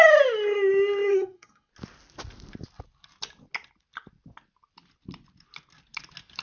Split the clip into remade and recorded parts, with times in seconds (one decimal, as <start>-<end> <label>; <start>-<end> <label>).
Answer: 0.0-1.1 recorded; 1.1-1.7 remade; 1.7-6.4 recorded